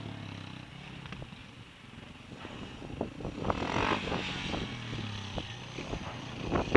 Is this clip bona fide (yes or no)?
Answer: yes